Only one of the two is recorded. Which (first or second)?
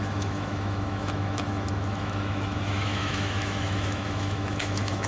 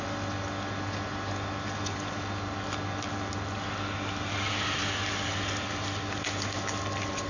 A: second